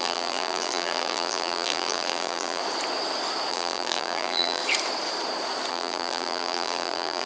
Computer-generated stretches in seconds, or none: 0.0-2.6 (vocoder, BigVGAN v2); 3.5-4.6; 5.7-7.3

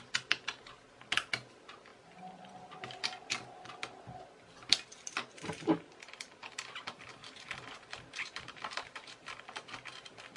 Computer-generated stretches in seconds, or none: 7.2-9.3 (vocoder, BigVGAN v2)